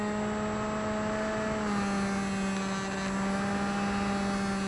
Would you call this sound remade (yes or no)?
no